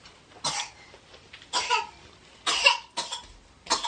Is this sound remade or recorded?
recorded